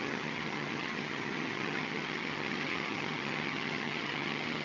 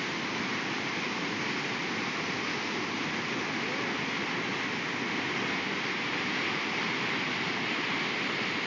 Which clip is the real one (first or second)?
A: second